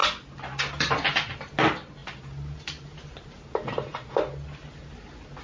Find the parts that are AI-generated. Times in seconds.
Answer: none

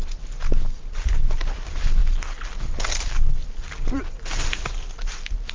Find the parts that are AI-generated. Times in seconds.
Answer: none

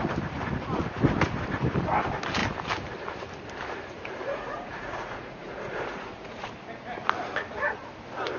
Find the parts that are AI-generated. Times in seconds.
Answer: 4.3-6.5

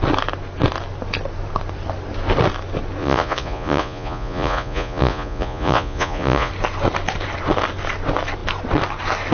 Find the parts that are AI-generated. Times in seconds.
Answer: 3.0-6.5

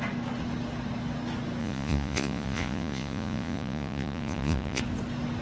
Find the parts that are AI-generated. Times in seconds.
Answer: 1.6-4.8